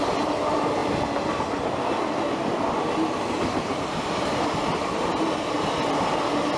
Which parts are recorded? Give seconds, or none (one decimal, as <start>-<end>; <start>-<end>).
0.0-6.6